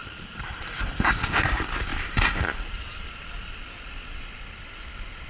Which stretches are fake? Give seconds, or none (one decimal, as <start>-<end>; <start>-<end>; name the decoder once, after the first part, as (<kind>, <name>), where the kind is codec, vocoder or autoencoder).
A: 0.0-1.2 (vocoder, BigVGAN v2); 1.9-3.1